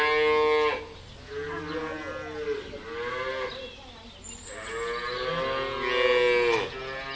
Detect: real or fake real